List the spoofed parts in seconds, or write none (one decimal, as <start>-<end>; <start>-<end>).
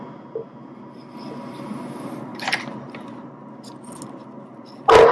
2.3-2.9